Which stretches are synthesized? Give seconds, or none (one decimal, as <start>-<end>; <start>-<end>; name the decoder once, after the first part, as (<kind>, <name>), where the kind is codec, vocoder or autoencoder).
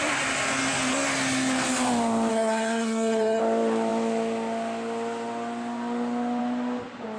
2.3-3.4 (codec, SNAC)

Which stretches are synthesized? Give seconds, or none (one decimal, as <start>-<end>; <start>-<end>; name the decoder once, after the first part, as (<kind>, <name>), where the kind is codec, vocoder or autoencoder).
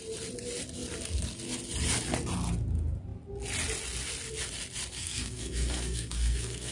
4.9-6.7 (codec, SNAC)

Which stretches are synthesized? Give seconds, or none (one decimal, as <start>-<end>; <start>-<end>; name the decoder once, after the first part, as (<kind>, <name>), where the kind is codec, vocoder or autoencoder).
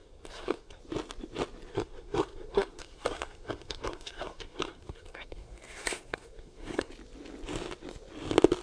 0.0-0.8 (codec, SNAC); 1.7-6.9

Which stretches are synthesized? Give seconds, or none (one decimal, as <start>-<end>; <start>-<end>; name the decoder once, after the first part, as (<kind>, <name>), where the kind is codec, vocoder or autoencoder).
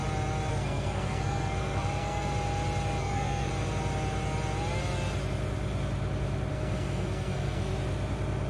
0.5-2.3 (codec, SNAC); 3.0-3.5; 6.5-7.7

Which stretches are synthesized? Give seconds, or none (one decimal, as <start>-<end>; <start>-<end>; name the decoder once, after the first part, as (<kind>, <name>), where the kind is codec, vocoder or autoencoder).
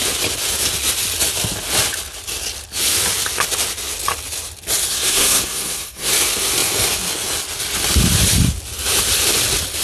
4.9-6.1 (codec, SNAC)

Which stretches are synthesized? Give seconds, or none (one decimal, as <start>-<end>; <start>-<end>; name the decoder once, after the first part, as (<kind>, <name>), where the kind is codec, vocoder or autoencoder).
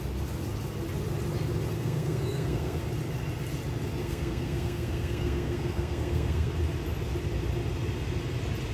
1.7-2.8 (codec, SNAC); 4.0-6.5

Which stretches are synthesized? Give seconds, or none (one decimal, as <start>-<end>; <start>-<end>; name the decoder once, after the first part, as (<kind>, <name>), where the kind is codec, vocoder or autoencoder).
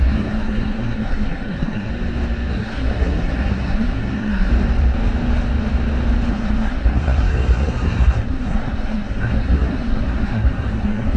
0.0-1.9 (codec, SNAC); 2.5-4.5; 6.3-11.2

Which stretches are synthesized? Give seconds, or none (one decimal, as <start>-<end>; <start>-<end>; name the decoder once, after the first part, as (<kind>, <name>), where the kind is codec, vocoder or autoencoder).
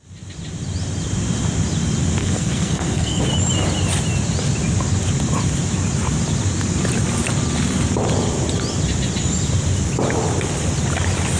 2.2-3.2 (codec, SNAC)